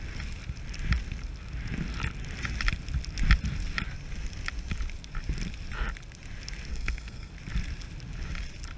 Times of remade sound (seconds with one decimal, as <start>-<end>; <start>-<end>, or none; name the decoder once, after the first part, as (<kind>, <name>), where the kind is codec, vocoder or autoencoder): 6.7-7.3 (codec, SNAC)